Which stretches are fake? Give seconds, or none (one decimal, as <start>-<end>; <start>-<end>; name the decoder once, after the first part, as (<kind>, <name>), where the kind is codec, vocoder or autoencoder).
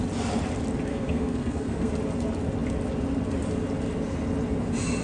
0.9-1.9 (codec, SNAC)